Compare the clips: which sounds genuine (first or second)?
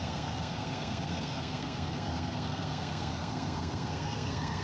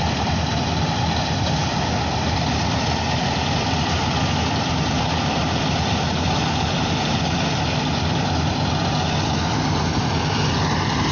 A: second